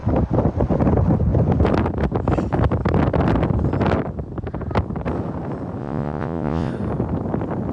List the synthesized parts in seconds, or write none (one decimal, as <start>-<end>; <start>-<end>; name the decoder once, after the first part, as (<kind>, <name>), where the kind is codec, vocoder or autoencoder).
5.8-6.7 (vocoder, Vocos)